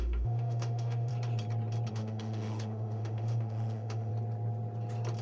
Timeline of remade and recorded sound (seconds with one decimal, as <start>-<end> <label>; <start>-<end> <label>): 0.0-1.1 remade; 1.1-1.9 recorded; 1.9-4.1 remade; 4.1-5.2 recorded